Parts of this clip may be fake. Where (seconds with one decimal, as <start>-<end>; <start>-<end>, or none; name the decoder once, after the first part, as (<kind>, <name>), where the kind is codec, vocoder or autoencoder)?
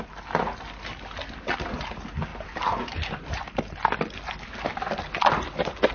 2.3-3.6 (vocoder, BigVGAN v2)